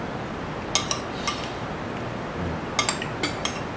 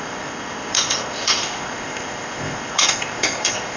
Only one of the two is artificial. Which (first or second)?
second